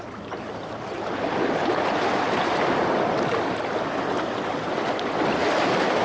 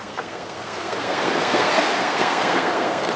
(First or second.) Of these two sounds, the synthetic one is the second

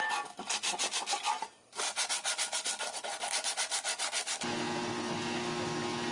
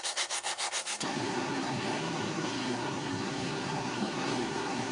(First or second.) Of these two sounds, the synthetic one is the second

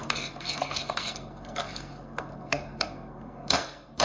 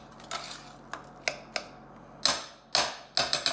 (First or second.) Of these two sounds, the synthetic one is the first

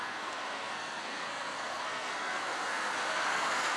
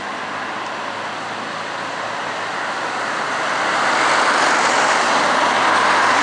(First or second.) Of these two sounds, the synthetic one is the first